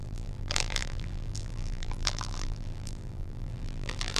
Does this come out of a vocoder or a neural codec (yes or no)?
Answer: yes